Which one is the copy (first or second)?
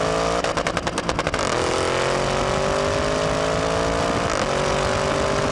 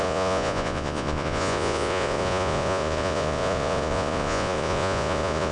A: second